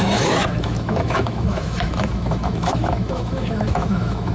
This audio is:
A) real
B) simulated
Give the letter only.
B